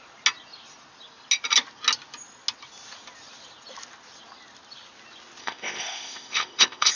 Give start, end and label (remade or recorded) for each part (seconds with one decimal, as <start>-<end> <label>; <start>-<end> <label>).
0.0-5.4 recorded; 5.4-7.0 remade